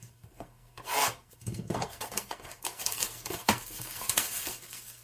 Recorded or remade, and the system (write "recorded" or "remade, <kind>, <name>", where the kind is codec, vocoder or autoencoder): remade, codec, SNAC